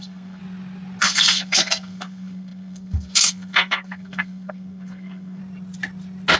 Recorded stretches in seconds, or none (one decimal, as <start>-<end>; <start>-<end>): 0.4-1.0; 5.4-6.4